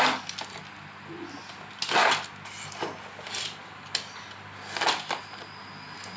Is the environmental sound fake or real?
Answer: real